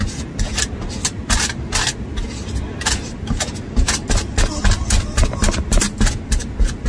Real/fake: real